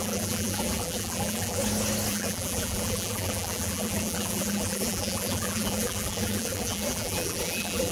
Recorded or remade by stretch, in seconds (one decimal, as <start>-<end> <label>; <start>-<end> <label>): 0.0-1.6 remade; 1.6-2.1 recorded; 2.1-7.9 remade